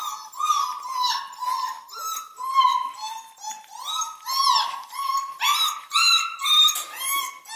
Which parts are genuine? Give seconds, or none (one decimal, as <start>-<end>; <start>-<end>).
0.0-7.6